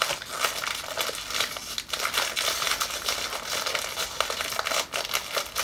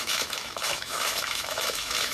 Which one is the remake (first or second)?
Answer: second